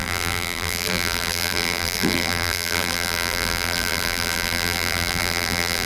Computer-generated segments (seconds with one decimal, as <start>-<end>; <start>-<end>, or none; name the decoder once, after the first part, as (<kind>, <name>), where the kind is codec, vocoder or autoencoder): 0.0-5.9 (vocoder, BigVGAN v2)